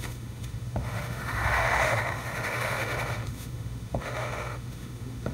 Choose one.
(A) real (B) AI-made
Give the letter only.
B